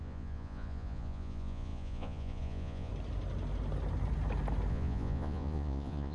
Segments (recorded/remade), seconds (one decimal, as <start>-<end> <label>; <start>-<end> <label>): 0.0-2.9 remade; 2.9-4.7 recorded; 4.7-6.1 remade